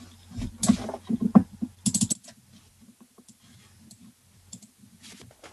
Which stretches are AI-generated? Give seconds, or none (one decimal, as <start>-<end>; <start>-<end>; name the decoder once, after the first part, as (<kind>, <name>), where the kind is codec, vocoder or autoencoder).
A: none